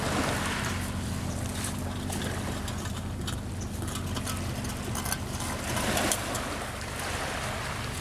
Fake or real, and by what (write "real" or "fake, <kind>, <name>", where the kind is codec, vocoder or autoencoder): real